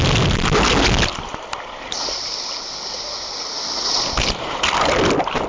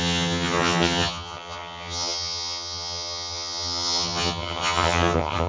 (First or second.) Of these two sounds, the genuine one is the first